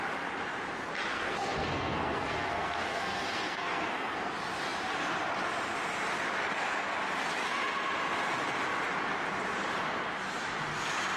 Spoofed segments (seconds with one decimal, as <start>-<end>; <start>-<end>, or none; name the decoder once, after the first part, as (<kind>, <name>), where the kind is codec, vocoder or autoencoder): 1.1-4.3 (codec, SNAC)